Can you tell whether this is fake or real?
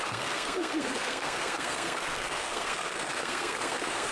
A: fake